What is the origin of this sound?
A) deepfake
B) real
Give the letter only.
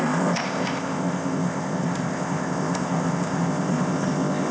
A